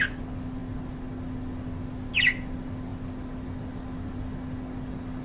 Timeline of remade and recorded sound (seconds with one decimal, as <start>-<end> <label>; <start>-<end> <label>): 0.0-5.2 recorded